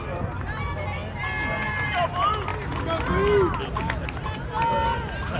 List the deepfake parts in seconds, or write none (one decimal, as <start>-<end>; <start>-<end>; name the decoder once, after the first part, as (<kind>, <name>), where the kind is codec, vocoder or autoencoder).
none